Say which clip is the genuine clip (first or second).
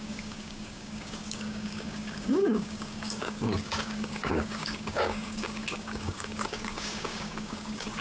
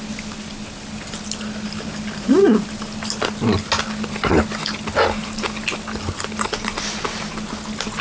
second